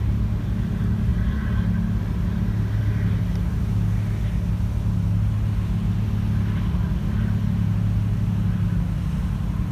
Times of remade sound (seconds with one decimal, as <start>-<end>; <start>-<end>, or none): none